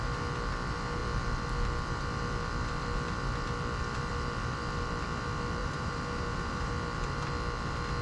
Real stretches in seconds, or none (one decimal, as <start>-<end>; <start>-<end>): 0.0-5.6; 6.7-8.0